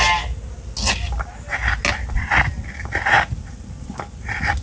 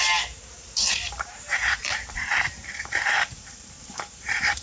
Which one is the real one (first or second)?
first